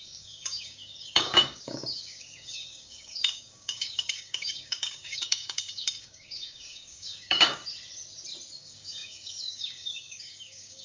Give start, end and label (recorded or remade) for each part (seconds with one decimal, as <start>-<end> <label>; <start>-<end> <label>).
0.0-7.6 remade; 7.6-8.6 recorded; 8.6-10.8 remade